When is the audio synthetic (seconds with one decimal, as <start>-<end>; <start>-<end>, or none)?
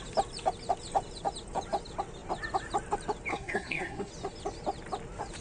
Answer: 3.3-4.1